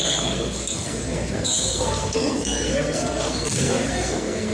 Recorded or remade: remade